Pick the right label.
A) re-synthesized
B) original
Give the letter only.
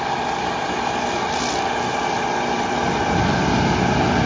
B